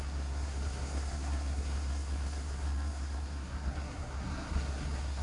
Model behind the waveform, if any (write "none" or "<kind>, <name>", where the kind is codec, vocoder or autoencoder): codec, SNAC